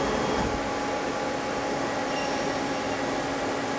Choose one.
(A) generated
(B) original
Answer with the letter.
B